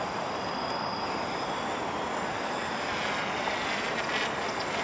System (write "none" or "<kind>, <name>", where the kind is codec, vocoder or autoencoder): none